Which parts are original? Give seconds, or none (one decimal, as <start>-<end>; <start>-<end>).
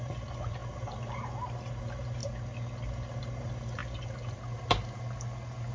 2.2-3.2; 3.8-5.7